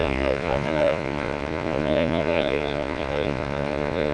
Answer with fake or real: fake